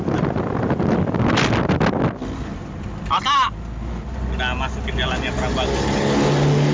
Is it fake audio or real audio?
real